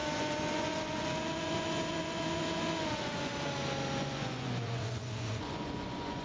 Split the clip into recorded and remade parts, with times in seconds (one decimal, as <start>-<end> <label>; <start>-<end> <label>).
0.0-3.3 remade; 3.3-4.0 recorded; 4.0-6.2 remade